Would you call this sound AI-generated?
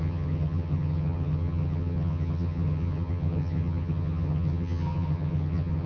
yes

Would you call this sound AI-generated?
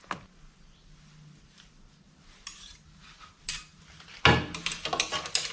no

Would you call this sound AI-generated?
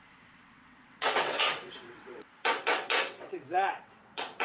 yes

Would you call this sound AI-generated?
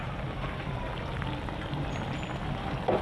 no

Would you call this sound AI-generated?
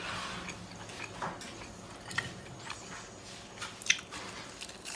no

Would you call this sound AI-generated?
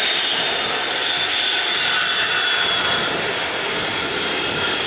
no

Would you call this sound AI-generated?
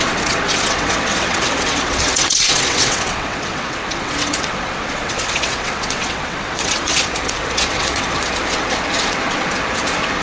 yes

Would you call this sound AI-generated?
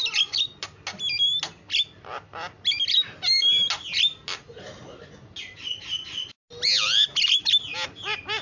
no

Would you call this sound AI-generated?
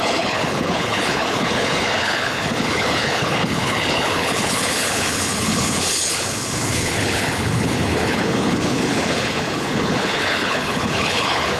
yes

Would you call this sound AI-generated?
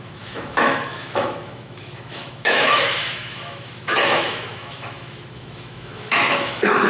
yes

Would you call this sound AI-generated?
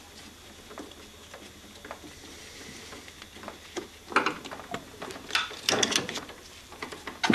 no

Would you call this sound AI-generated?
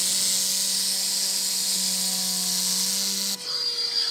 no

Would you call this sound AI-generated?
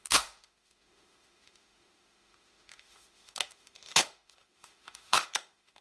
yes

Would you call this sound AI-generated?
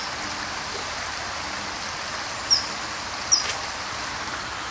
no